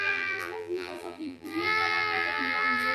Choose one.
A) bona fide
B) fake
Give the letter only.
B